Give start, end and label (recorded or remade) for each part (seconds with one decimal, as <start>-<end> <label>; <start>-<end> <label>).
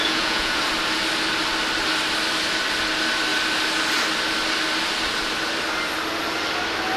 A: 0.0-0.6 remade; 0.6-7.0 recorded